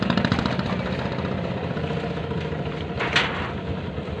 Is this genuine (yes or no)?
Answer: yes